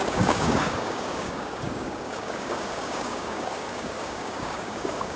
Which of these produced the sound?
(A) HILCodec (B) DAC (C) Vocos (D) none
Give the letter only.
B